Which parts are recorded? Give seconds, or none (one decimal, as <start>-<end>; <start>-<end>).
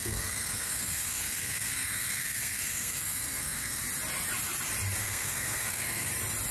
3.8-5.0; 6.1-6.5